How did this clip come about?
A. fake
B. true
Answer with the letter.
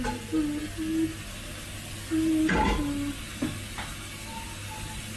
B